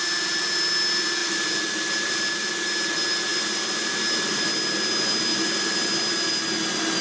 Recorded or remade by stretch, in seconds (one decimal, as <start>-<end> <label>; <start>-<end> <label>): 0.0-1.2 recorded; 1.2-2.5 remade; 2.5-7.0 recorded